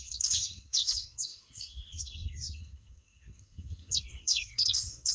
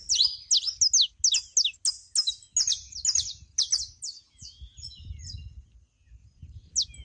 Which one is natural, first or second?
second